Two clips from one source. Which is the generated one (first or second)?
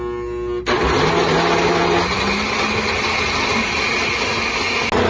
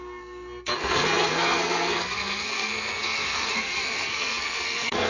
second